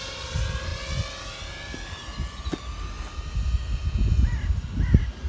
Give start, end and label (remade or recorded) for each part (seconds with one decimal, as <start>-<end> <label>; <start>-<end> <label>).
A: 0.0-5.3 recorded